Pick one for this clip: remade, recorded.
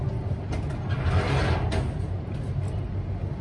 recorded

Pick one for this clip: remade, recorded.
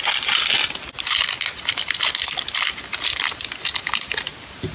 recorded